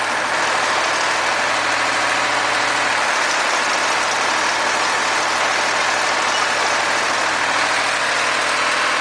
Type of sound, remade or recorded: recorded